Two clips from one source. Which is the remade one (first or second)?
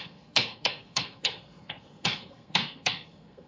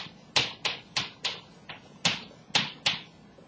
first